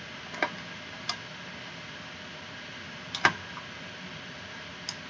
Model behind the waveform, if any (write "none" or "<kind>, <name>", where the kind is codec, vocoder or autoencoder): none